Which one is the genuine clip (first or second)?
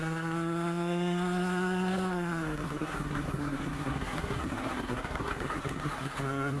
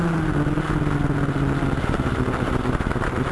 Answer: second